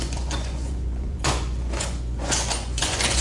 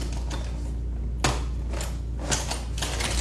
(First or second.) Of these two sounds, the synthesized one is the first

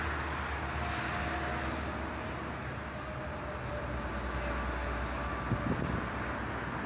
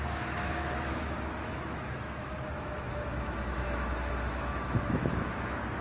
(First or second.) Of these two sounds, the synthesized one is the second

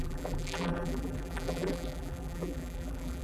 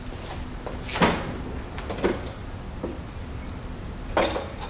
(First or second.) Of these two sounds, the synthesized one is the first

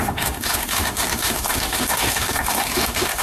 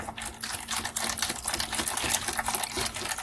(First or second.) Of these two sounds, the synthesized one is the first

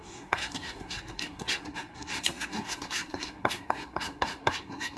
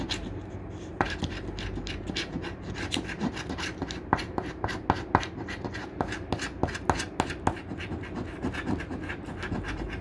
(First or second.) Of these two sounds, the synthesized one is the first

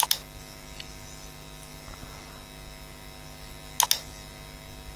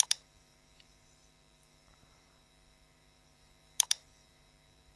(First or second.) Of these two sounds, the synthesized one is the second